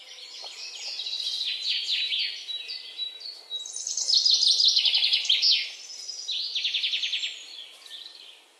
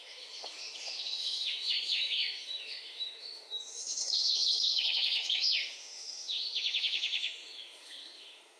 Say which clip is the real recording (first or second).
first